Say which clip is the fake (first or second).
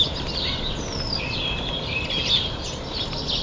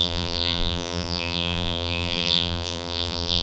second